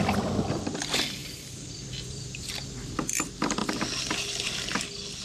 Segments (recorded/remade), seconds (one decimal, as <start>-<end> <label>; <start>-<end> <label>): 0.0-1.2 recorded; 1.2-2.7 remade; 2.7-5.2 recorded